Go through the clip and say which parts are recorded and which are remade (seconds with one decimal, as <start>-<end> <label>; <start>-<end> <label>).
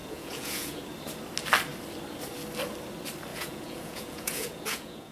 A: 0.0-0.8 remade; 0.8-3.3 recorded; 3.3-5.1 remade